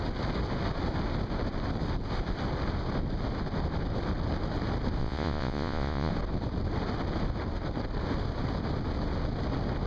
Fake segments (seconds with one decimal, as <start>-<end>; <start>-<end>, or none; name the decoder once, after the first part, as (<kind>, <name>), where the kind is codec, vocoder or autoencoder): 5.0-6.1 (vocoder, Vocos)

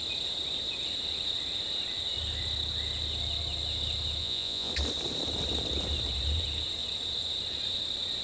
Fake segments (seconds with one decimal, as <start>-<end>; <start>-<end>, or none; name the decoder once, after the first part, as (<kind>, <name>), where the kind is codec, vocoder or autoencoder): 4.2-4.7 (vocoder, Vocos)

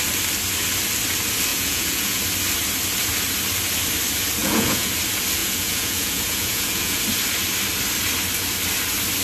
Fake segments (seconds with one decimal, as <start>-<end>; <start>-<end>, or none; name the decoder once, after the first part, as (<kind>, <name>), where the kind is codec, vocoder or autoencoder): 1.5-2.2 (vocoder, Vocos); 4.4-4.9; 5.4-7.0